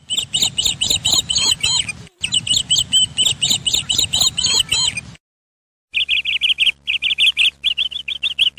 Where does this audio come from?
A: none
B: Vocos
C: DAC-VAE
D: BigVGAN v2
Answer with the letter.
A